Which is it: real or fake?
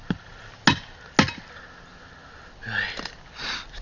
real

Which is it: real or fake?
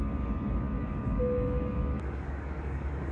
fake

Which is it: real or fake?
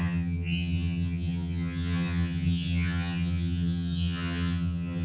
fake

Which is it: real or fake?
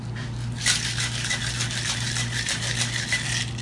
real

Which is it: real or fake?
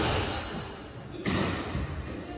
real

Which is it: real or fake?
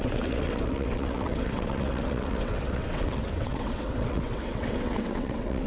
fake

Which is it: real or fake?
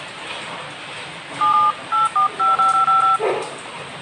real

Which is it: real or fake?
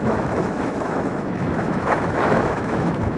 fake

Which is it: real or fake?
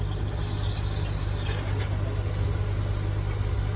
real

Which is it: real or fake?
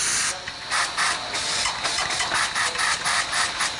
real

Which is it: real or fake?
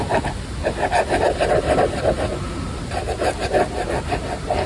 real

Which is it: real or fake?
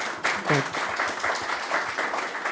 real